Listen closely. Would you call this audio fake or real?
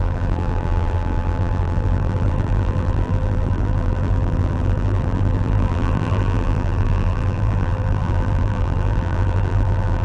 fake